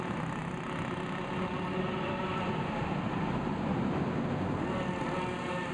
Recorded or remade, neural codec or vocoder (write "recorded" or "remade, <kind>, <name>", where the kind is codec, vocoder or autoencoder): recorded